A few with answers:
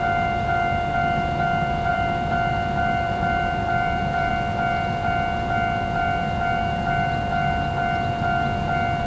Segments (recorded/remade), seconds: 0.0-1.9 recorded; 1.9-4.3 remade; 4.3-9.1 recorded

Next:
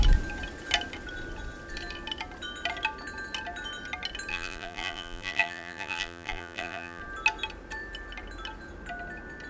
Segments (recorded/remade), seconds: 0.0-4.3 recorded; 4.3-7.0 remade; 7.0-9.5 recorded

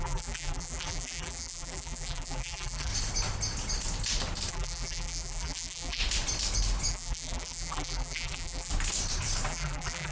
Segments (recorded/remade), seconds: 0.0-2.9 remade; 2.9-4.5 recorded; 4.5-6.0 remade; 6.0-6.9 recorded; 6.9-8.7 remade; 8.7-9.5 recorded; 9.5-10.1 remade

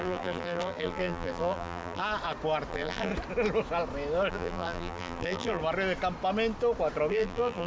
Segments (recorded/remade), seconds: 0.0-2.0 remade; 2.0-2.7 recorded; 2.7-3.1 remade; 3.1-4.3 recorded; 4.3-5.6 remade; 5.6-7.1 recorded; 7.1-7.7 remade

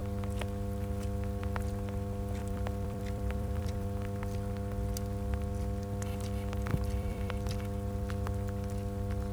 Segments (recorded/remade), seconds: 0.0-2.4 recorded; 2.4-4.5 remade; 4.5-6.7 recorded; 6.7-7.3 remade; 7.3-9.3 recorded

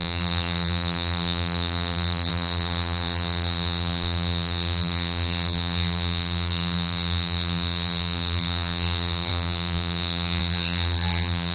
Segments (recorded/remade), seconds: 0.0-11.5 remade

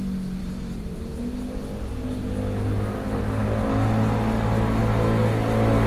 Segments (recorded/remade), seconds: 0.0-0.4 recorded; 0.4-1.0 remade; 1.0-5.9 recorded

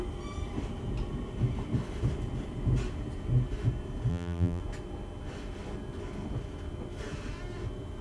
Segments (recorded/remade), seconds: 0.0-4.1 recorded; 4.1-4.6 remade; 4.6-8.0 recorded